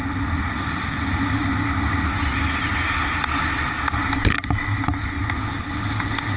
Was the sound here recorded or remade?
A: recorded